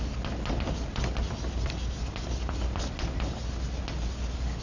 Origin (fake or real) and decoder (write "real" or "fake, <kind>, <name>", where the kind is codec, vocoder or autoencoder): real